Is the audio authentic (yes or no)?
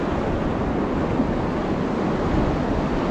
yes